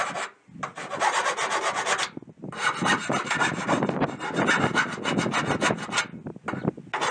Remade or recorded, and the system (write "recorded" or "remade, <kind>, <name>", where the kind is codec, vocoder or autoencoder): recorded